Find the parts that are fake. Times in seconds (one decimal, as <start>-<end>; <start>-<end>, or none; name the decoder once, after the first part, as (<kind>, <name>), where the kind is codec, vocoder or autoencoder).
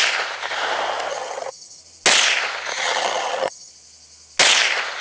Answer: 1.1-1.8 (vocoder, HiFi-GAN); 2.7-3.7